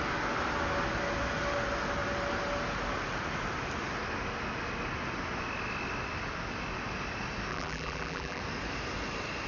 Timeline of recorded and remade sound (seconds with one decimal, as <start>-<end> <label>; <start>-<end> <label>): 0.0-7.5 recorded; 7.5-8.4 remade; 8.4-9.5 recorded